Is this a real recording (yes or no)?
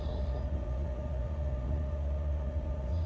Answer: no